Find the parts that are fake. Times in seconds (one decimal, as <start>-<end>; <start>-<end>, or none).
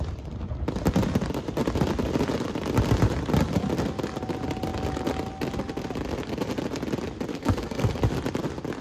7.3-7.9